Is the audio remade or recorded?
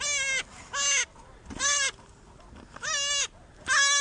recorded